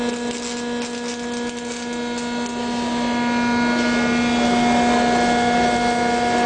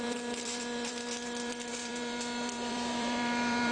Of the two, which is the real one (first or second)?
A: first